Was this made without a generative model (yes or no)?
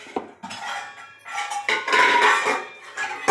yes